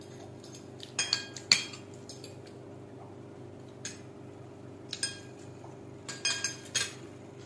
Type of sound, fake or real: real